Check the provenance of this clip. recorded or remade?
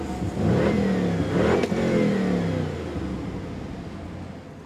recorded